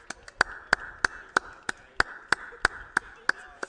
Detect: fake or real real